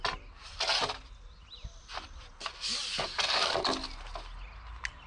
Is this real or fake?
real